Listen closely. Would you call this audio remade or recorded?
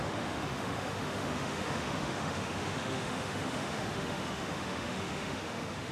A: remade